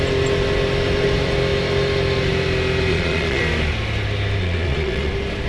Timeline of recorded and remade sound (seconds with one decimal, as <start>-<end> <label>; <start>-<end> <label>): 0.0-2.9 recorded; 2.9-3.4 remade; 3.4-4.4 recorded; 4.4-5.1 remade; 5.1-5.5 recorded